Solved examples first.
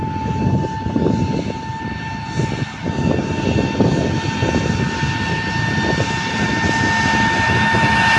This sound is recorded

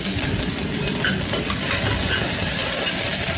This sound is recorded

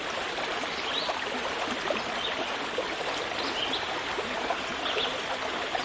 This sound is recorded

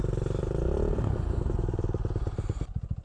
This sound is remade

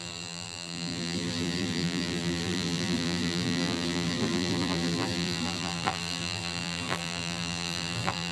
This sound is remade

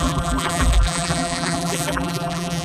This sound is remade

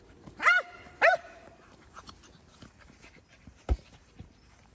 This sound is remade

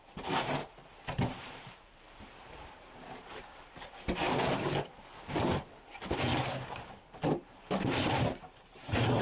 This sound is remade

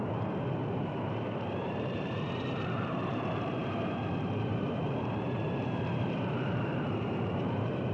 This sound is remade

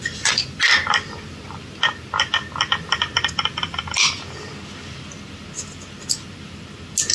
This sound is recorded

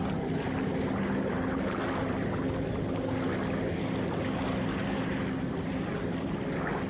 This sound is recorded